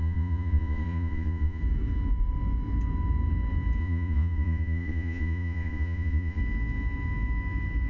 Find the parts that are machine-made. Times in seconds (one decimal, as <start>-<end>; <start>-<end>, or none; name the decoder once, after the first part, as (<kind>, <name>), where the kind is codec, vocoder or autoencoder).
0.0-1.6 (vocoder, Vocos); 3.8-6.4